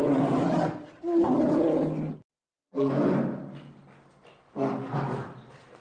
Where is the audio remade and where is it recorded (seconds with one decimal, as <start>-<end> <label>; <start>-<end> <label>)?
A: 0.0-2.3 recorded; 2.3-2.9 remade; 2.9-5.8 recorded